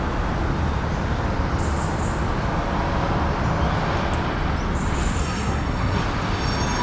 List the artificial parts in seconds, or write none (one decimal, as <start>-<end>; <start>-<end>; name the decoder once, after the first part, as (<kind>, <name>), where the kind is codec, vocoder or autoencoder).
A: 5.2-6.0 (codec, SNAC)